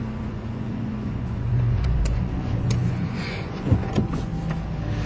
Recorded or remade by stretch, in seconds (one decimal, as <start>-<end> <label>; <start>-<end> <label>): 0.0-4.3 remade; 4.3-5.1 recorded